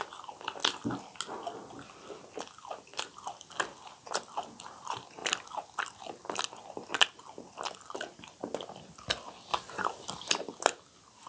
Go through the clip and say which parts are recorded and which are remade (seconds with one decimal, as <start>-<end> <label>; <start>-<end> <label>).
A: 0.0-11.3 recorded